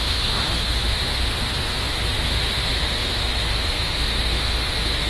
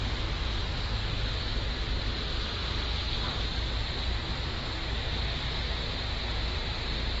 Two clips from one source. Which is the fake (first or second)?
first